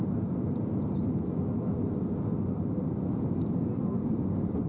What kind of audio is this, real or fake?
real